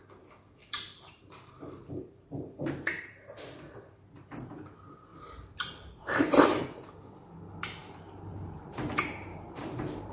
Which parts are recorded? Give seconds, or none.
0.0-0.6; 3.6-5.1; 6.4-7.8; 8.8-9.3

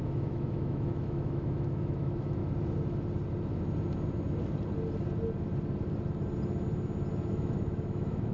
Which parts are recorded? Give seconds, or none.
2.4-7.3

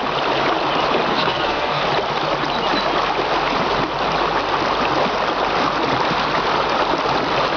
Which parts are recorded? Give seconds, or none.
0.0-1.1; 1.8-7.6

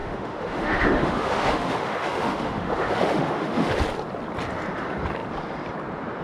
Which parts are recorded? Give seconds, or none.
3.7-6.2